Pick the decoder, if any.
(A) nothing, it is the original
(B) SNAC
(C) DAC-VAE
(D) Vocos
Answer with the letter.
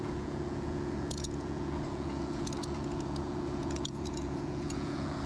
D